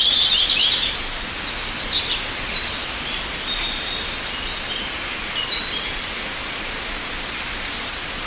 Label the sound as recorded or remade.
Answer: recorded